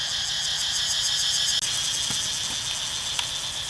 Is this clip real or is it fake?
real